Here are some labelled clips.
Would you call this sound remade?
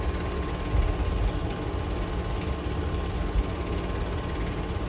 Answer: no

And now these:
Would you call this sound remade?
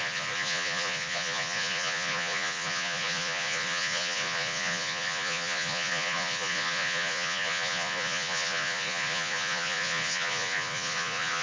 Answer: yes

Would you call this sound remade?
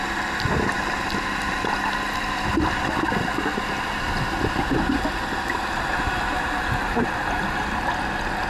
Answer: no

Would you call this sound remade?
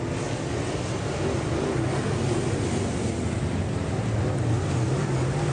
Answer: no